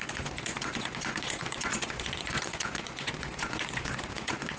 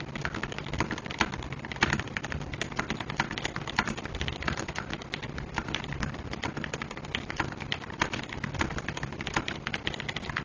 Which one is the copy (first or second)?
first